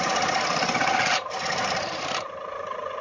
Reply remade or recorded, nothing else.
recorded